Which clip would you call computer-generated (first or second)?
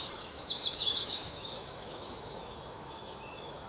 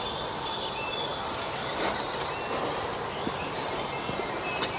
first